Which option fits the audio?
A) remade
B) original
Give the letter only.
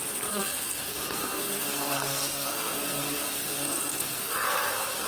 A